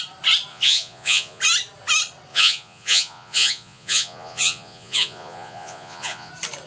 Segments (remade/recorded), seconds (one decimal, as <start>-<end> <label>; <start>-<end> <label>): 0.0-0.5 recorded; 0.5-1.4 remade; 1.4-2.3 recorded; 2.3-6.3 remade; 6.3-6.7 recorded